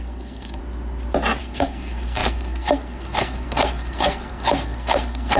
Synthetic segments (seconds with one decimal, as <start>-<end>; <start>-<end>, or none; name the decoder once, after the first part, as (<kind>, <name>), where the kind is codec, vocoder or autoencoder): 0.0-0.6 (codec, SNAC); 1.4-5.4